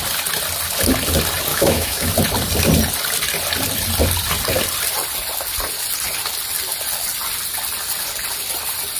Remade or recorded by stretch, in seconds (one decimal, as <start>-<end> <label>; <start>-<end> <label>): 0.0-1.5 recorded; 1.5-2.1 remade; 2.1-9.0 recorded